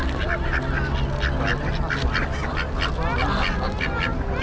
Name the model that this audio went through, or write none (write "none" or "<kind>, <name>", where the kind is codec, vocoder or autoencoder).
none